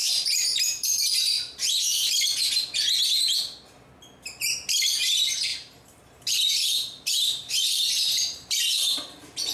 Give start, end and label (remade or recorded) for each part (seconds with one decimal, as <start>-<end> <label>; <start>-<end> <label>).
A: 0.0-1.6 remade; 1.6-5.5 recorded; 5.5-8.6 remade; 8.6-9.5 recorded